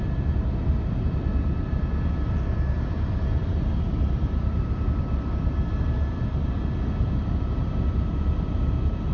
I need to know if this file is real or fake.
fake